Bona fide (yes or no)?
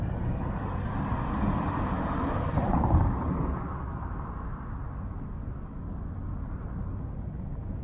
yes